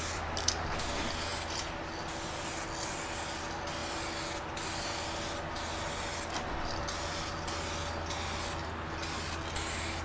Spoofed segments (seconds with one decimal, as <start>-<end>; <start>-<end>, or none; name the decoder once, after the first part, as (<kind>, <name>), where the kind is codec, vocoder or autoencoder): none